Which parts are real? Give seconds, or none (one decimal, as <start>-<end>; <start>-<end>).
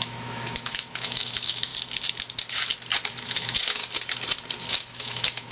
1.7-3.1; 3.8-4.7